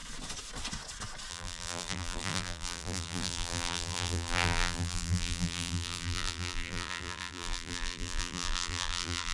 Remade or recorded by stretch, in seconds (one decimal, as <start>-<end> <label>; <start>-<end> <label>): 0.0-1.3 recorded; 1.3-9.3 remade